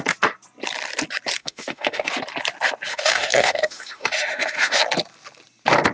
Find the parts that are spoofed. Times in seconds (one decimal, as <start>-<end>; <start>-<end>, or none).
1.4-2.1; 2.9-4.8